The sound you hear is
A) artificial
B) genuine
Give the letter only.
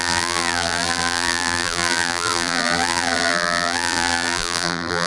A